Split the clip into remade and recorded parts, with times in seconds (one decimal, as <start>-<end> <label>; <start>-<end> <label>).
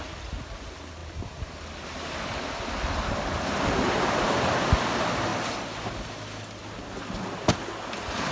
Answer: 0.0-8.3 recorded